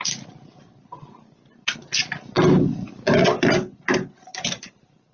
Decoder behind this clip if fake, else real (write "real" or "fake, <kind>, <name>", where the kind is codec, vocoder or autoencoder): real